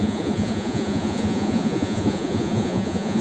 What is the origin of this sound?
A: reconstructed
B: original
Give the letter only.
A